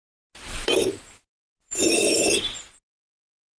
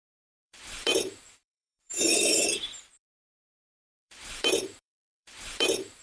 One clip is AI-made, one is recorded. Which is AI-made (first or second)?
second